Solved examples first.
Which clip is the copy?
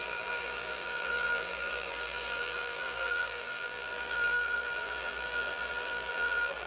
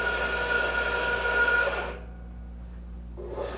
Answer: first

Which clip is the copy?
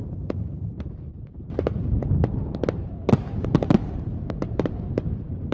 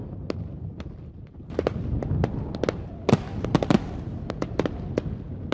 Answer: first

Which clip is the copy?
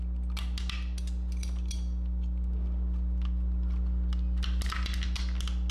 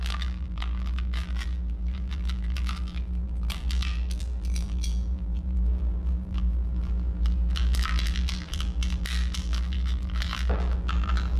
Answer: second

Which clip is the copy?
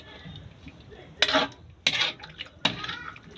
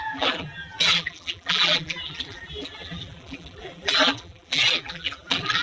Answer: second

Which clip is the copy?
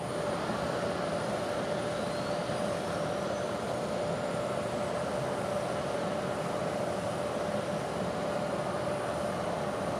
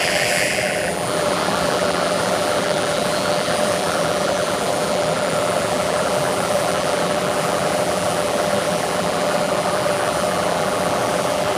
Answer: second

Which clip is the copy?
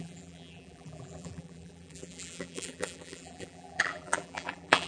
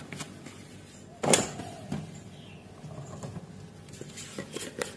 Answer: first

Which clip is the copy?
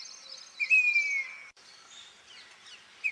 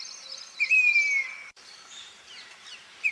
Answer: second